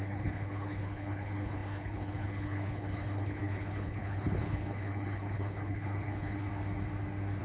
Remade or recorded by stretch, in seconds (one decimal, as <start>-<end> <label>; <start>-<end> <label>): 0.0-6.5 remade; 6.5-7.4 recorded